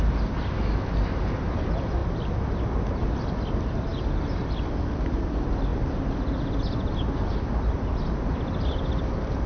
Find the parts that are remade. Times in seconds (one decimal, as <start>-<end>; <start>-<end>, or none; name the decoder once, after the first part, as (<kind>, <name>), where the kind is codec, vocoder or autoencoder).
none